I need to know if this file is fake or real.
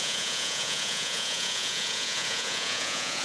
fake